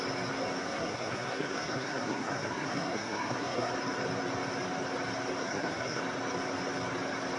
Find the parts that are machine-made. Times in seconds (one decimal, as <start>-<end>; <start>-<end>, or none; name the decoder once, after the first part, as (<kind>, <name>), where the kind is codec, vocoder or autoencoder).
0.6-3.7 (codec, SNAC); 5.4-6.0